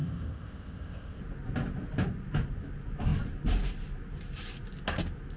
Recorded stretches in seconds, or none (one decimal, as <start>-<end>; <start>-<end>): 1.2-5.4